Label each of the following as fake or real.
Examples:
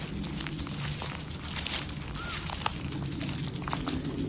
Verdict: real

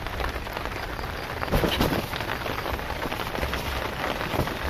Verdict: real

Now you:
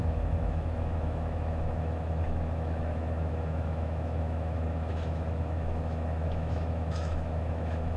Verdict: fake